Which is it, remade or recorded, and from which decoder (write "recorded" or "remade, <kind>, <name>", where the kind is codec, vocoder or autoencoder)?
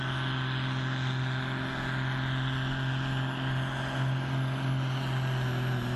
recorded